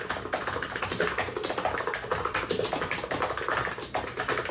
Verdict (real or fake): real